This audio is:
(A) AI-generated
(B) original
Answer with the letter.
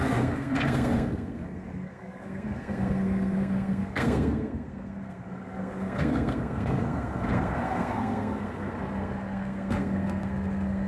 A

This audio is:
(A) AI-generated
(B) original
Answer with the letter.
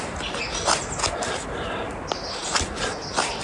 B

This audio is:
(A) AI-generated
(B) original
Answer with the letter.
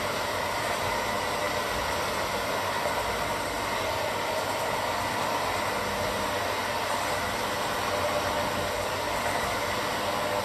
B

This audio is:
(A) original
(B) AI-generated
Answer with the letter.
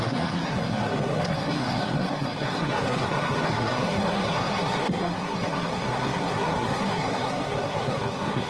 B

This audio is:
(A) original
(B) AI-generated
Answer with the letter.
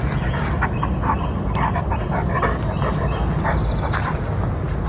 A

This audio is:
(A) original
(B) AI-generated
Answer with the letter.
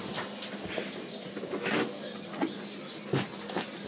A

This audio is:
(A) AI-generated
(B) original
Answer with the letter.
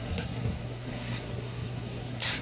A